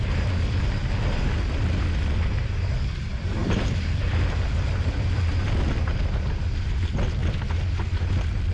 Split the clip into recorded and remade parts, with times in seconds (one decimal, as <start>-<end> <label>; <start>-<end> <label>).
0.0-3.4 recorded; 3.4-5.4 remade; 5.4-5.9 recorded; 5.9-6.4 remade; 6.4-8.5 recorded